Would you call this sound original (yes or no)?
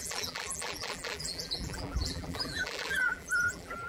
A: no